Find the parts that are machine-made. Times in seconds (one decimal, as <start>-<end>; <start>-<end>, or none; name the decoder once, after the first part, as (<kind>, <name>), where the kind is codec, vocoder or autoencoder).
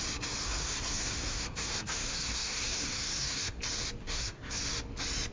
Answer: 0.4-3.6 (codec, SNAC); 4.0-4.6